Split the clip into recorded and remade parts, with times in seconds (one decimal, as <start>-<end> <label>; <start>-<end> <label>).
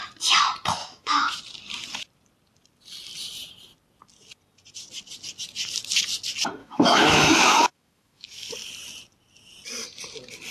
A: 0.0-0.8 recorded; 0.8-1.4 remade; 1.4-6.6 recorded; 6.6-8.5 remade; 8.5-10.5 recorded